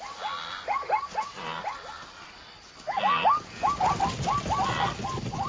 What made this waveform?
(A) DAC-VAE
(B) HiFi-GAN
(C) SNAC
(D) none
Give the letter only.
D